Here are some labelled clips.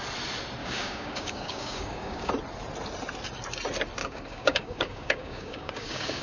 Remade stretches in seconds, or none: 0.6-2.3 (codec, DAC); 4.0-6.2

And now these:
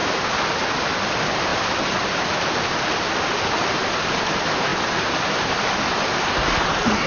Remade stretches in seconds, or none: 0.0-0.5 (vocoder, BigVGAN v2); 1.5-3.4; 4.7-6.6

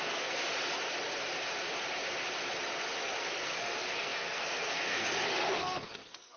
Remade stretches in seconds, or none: 0.0-0.4 (codec, SNAC); 3.0-6.4

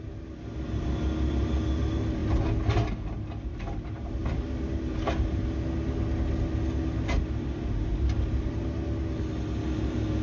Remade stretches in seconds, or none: 7.9-8.6 (vocoder, BigVGAN v2)

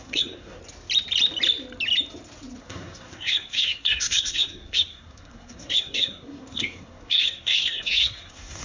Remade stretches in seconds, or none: 0.0-0.6 (codec, SNAC); 2.6-8.6

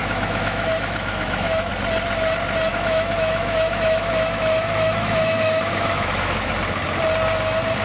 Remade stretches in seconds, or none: 0.0-1.7 (autoencoder, DAC-VAE); 2.7-6.5